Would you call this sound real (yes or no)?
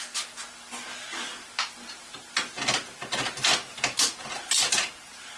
yes